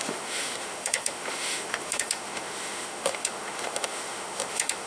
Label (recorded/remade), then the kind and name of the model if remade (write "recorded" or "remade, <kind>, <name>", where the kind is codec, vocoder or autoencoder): remade, autoencoder, DAC-VAE